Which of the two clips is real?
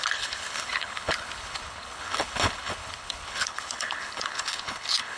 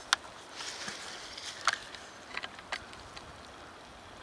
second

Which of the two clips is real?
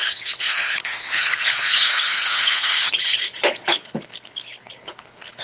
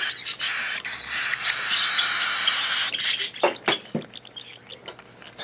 second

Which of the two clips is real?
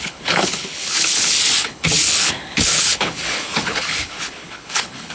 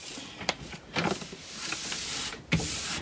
second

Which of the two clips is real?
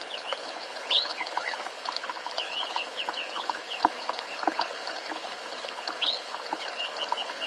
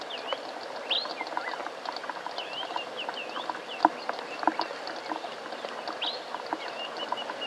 second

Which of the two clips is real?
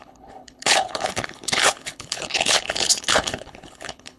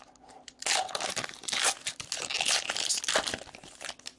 second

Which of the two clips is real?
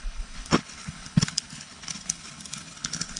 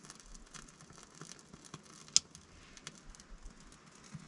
second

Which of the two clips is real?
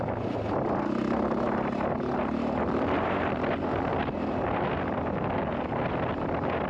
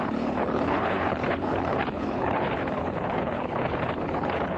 first